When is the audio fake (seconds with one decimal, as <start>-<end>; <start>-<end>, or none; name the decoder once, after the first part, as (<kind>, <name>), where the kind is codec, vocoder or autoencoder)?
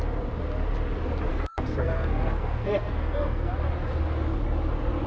1.3-3.5 (codec, SNAC)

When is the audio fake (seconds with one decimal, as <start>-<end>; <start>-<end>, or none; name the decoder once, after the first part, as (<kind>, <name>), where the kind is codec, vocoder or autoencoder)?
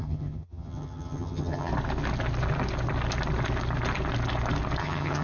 0.0-1.7 (vocoder, HiFi-GAN); 4.8-5.2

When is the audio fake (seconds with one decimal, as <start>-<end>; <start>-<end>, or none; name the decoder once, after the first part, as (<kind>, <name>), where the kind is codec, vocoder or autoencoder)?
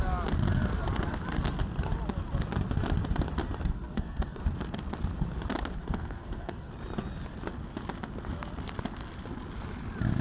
3.7-4.4 (codec, SNAC); 5.8-6.7